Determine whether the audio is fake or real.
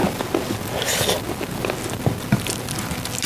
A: real